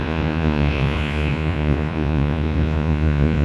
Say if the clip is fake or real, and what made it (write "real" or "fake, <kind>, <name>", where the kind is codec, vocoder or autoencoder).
fake, vocoder, Vocos